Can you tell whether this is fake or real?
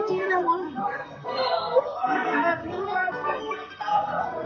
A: fake